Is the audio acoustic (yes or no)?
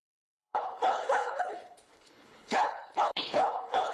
no